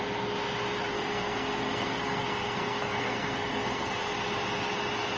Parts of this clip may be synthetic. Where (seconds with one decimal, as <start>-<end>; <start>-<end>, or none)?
0.9-4.0